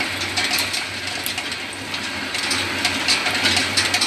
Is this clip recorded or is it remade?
recorded